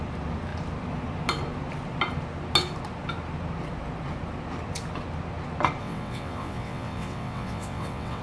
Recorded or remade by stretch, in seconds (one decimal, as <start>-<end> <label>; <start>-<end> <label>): 0.0-5.8 recorded; 5.8-8.2 remade